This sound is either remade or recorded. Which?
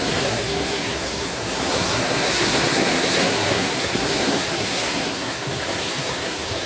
remade